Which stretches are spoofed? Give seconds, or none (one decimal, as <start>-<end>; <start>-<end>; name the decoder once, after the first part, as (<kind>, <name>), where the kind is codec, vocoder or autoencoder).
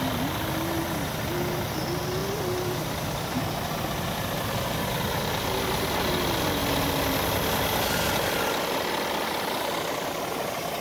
none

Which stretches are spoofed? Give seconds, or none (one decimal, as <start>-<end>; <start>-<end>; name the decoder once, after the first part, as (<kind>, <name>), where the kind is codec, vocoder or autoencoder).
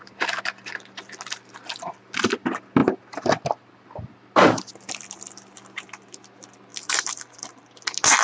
none